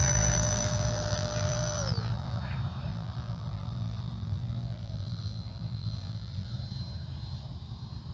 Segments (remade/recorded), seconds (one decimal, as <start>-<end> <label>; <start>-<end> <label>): 0.0-2.4 remade; 2.4-2.9 recorded; 2.9-6.5 remade; 6.5-8.1 recorded